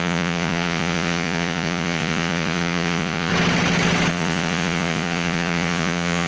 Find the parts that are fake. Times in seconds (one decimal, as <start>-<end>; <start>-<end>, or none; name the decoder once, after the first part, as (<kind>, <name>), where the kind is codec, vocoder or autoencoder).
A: 0.0-3.3 (vocoder, Vocos); 4.1-6.3